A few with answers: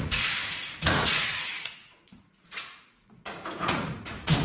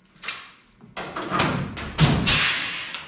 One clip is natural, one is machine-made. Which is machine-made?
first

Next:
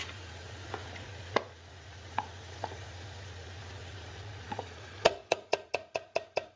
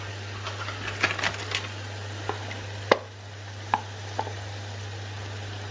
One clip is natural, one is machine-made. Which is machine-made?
first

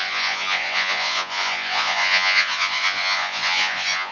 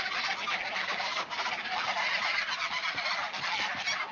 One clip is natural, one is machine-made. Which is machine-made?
first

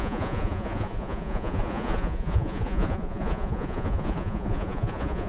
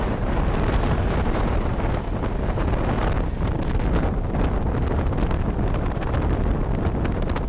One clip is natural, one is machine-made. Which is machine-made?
first